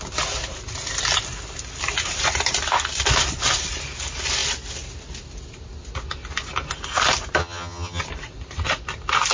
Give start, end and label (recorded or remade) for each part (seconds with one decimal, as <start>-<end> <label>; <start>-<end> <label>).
0.0-7.4 recorded; 7.4-8.0 remade; 8.0-9.3 recorded